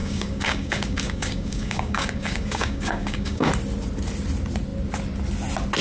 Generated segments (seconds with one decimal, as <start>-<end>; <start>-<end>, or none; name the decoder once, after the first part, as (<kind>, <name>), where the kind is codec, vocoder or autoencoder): 0.0-3.5 (codec, DAC)